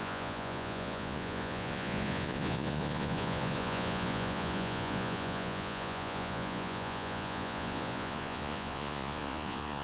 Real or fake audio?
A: fake